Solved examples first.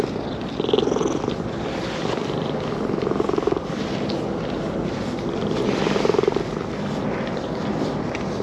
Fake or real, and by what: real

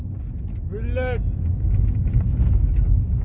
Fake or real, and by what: real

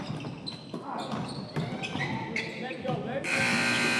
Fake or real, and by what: real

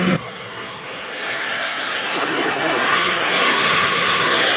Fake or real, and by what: fake, codec, SNAC